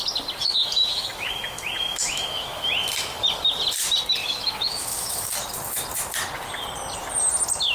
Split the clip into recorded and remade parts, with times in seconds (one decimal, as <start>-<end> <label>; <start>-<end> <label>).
0.0-0.4 recorded; 0.4-2.7 remade; 2.7-4.2 recorded; 4.2-5.3 remade; 5.3-7.7 recorded